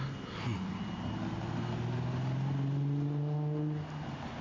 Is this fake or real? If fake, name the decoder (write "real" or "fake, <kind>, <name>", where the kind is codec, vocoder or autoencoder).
real